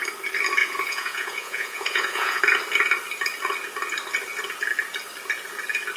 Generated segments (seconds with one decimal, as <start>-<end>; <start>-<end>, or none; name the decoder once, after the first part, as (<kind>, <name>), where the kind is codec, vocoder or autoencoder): 0.6-2.4 (vocoder, Vocos)